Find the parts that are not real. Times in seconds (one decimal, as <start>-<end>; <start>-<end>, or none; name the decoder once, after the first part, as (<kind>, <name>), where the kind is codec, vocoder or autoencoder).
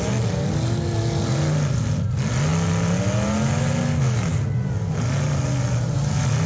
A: none